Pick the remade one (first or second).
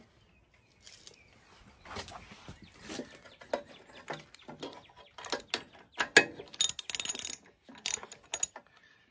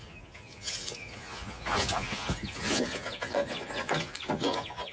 second